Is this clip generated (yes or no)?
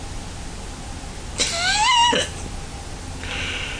no